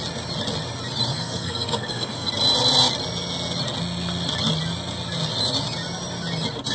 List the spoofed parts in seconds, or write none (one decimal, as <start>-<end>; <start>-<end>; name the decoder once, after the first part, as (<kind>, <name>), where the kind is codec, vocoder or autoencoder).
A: 1.1-2.3 (codec, SNAC)